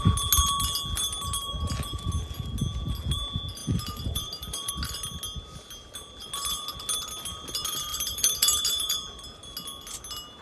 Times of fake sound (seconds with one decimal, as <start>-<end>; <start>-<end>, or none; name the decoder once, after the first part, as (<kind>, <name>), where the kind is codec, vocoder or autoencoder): 3.6-4.7 (vocoder, BigVGAN v2); 7.9-9.0